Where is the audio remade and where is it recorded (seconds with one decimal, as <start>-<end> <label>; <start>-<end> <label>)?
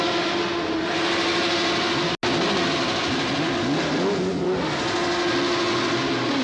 0.0-6.4 recorded